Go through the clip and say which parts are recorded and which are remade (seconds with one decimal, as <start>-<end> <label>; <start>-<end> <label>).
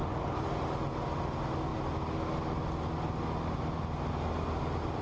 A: 0.0-5.0 recorded